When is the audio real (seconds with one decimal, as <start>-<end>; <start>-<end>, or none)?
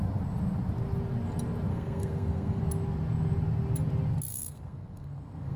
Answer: 0.0-1.7; 2.6-4.3